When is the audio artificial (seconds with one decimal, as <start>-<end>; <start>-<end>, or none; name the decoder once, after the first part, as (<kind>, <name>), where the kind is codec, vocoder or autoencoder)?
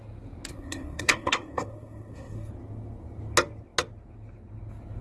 0.5-2.5 (codec, SNAC)